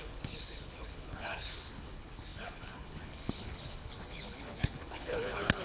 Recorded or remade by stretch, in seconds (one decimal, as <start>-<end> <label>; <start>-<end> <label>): 0.0-5.6 remade